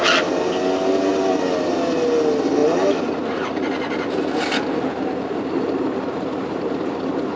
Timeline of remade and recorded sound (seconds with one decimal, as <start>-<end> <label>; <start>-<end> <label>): 0.0-1.1 recorded; 1.1-1.7 remade; 1.7-7.4 recorded